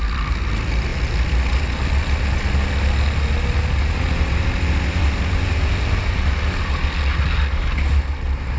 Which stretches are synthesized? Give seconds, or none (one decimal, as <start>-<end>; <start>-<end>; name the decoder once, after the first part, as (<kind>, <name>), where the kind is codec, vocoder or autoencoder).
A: none